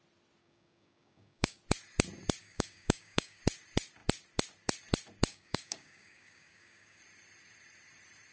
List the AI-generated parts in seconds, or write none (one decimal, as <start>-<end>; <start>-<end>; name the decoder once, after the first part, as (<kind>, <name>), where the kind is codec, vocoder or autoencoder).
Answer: 0.4-1.6 (codec, DAC); 2.4-3.4; 5.3-7.0